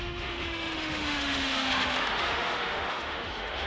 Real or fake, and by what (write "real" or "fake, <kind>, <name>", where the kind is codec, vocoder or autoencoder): fake, autoencoder, DAC-VAE